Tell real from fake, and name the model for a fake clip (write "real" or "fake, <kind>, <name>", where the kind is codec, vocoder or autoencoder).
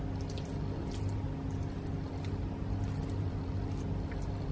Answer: real